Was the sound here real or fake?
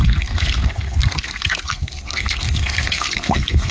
fake